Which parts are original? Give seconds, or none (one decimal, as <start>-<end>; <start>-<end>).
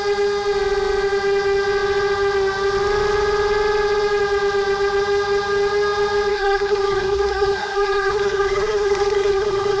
0.0-6.3